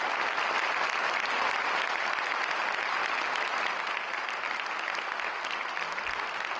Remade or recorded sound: recorded